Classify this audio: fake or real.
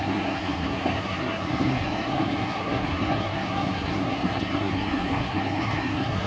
fake